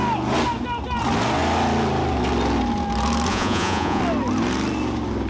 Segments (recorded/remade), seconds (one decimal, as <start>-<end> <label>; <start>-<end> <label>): 0.0-3.3 recorded; 3.3-4.0 remade; 4.0-5.3 recorded